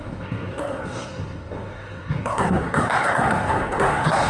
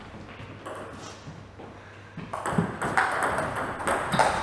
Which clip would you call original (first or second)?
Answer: second